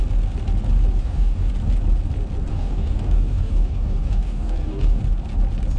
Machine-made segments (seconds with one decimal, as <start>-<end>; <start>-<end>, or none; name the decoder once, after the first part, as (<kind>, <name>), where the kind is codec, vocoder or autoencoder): 1.0-1.5 (codec, DAC); 2.5-5.0